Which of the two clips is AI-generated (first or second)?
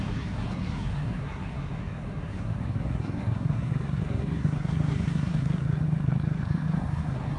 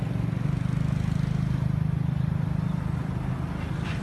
first